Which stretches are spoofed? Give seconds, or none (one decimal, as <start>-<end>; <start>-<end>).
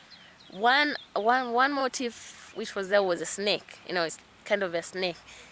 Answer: 1.8-4.1